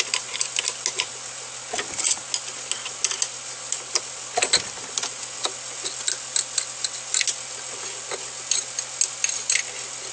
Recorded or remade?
recorded